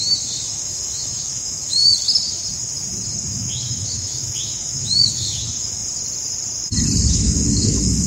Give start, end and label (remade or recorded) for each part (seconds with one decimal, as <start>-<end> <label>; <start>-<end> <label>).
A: 0.0-1.8 remade; 1.8-3.3 recorded; 3.3-5.8 remade; 5.8-7.1 recorded; 7.1-8.1 remade